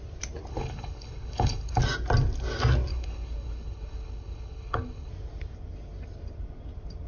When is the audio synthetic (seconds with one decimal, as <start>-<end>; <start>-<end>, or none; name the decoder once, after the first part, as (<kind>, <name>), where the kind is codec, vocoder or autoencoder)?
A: 0.5-1.8 (codec, HILCodec); 2.9-5.1